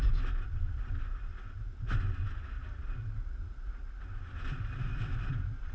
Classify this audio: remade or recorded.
recorded